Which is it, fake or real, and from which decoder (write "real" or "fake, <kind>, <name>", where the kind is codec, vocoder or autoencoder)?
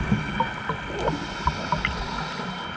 real